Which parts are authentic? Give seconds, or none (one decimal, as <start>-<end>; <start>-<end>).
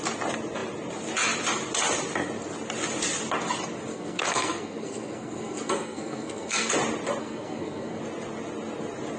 0.0-3.9; 6.7-7.2; 8.0-9.2